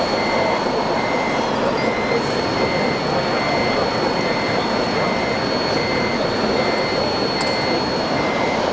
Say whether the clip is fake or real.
real